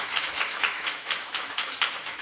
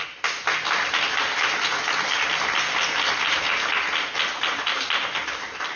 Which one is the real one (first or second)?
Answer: second